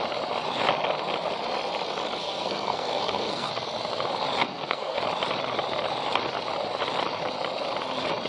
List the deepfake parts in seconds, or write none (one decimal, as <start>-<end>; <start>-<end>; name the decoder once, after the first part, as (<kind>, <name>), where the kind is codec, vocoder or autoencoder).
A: 2.2-3.5 (codec, SNAC); 4.4-5.0